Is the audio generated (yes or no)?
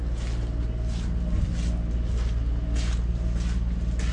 no